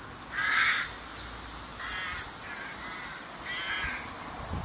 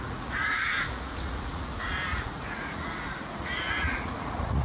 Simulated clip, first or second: second